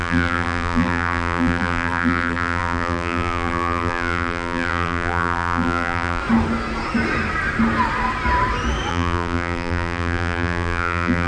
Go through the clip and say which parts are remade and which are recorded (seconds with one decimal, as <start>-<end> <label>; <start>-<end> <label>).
0.0-6.2 remade; 6.2-8.9 recorded; 8.9-11.3 remade

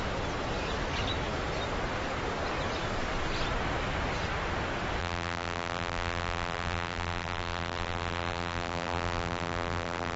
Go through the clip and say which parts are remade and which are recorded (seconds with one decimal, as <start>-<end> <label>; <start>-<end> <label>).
0.0-5.0 recorded; 5.0-10.2 remade

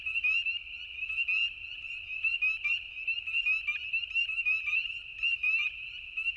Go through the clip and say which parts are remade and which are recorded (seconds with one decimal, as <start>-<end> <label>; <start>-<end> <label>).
0.0-1.4 recorded; 1.4-2.9 remade; 2.9-4.2 recorded; 4.2-5.5 remade; 5.5-6.4 recorded

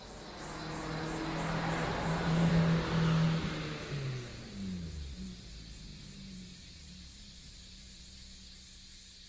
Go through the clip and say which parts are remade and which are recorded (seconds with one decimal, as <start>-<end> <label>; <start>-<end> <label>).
0.0-1.9 recorded; 1.9-2.5 remade; 2.5-4.3 recorded; 4.3-5.5 remade; 5.5-5.9 recorded; 5.9-8.0 remade; 8.0-9.3 recorded

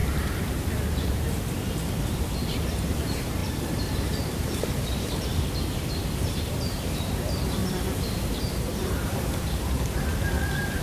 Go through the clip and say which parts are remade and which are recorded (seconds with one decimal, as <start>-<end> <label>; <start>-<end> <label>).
0.0-10.8 remade

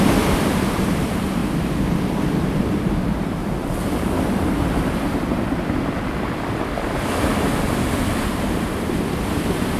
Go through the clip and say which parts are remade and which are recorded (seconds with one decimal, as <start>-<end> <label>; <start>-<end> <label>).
0.0-1.4 remade; 1.4-2.0 recorded; 2.0-3.4 remade; 3.4-8.3 recorded; 8.3-9.8 remade